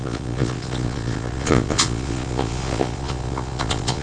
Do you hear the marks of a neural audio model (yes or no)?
yes